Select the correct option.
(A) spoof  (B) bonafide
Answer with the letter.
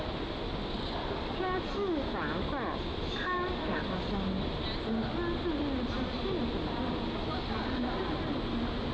B